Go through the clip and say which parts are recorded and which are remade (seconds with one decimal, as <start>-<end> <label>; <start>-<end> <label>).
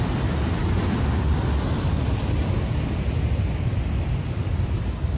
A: 0.0-5.2 recorded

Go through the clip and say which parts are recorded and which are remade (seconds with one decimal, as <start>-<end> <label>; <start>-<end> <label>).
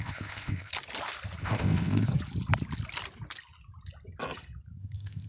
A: 0.0-0.7 remade; 0.7-1.4 recorded; 1.4-2.1 remade; 2.1-4.8 recorded; 4.8-5.3 remade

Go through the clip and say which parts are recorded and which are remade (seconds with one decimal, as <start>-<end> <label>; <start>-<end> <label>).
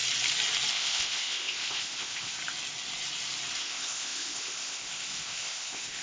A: 0.0-0.7 recorded; 0.7-2.4 remade; 2.4-3.6 recorded; 3.6-6.0 remade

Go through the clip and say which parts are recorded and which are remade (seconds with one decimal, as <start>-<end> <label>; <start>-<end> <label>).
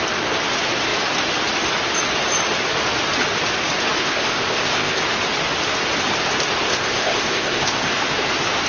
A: 0.0-4.0 recorded; 4.0-5.0 remade; 5.0-6.7 recorded; 6.7-7.9 remade; 7.9-8.7 recorded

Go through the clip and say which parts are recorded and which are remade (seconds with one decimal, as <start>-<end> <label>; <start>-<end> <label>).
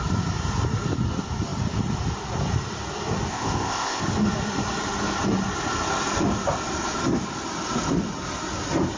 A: 0.0-3.3 recorded; 3.3-4.0 remade; 4.0-9.0 recorded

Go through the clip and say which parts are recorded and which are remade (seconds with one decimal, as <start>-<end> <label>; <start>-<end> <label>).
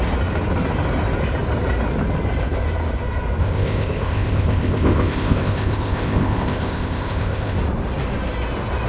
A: 0.0-3.4 recorded; 3.4-7.6 remade; 7.6-8.9 recorded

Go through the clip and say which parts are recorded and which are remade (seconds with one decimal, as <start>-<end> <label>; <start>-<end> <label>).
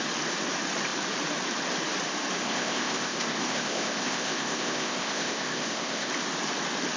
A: 0.0-2.4 recorded; 2.4-6.1 remade; 6.1-7.0 recorded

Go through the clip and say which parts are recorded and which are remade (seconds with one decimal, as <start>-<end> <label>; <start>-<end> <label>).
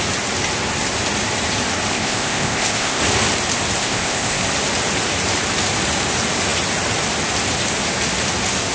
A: 0.0-1.9 recorded; 1.9-3.0 remade; 3.0-3.8 recorded; 3.8-4.4 remade; 4.4-8.7 recorded